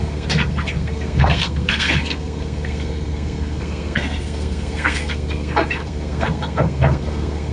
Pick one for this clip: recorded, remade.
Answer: remade